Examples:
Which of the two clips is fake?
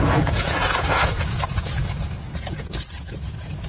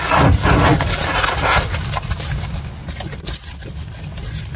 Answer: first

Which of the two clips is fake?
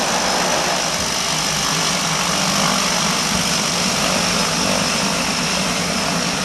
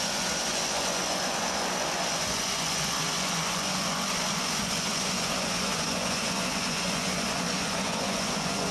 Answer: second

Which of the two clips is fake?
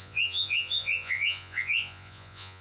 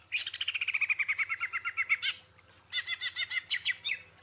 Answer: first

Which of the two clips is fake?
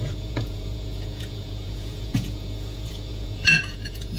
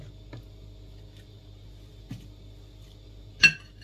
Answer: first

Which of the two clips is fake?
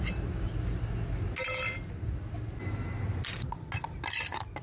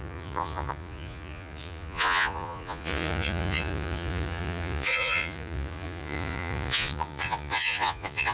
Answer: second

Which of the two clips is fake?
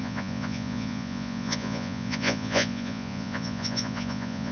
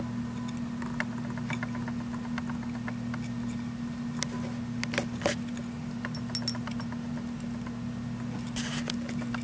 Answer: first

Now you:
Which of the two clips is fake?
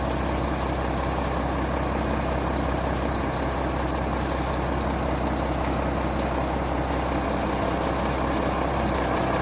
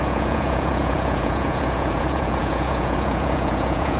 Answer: second